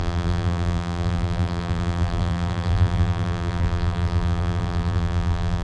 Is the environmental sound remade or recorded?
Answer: remade